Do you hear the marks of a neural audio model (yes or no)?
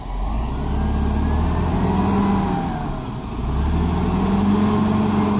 no